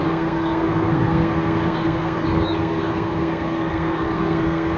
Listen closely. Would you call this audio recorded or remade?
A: remade